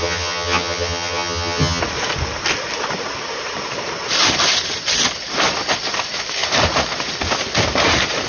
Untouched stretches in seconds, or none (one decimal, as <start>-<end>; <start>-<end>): 1.8-8.3